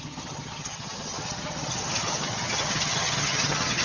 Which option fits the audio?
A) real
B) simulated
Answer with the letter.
B